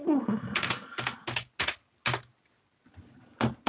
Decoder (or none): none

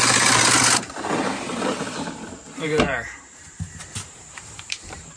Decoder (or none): vocoder, BigVGAN v2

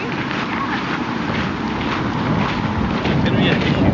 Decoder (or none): none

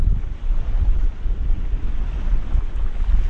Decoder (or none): vocoder, BigVGAN v2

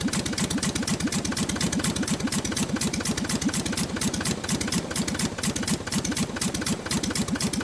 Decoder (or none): none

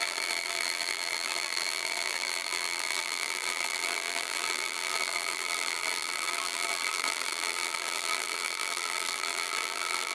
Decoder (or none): vocoder, BigVGAN v2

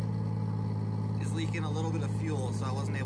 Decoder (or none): none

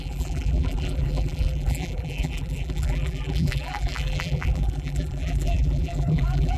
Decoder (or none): vocoder, BigVGAN v2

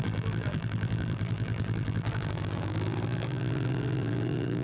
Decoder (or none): vocoder, BigVGAN v2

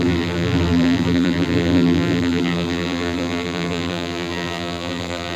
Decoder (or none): vocoder, BigVGAN v2